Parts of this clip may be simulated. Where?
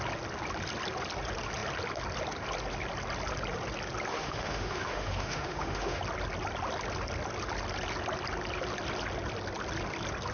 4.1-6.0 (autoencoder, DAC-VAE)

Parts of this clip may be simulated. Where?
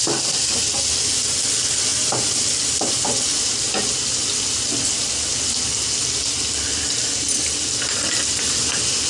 none